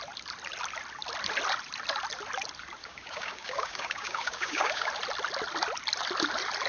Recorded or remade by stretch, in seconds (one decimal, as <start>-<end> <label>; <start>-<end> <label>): 0.0-2.8 recorded; 2.8-4.9 remade; 4.9-6.7 recorded